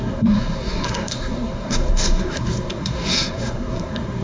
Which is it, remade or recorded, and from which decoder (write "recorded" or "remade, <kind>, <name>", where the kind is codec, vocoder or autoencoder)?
remade, codec, SNAC